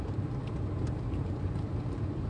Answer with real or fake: fake